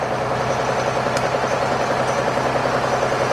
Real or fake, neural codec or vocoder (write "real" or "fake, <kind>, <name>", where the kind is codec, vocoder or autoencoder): real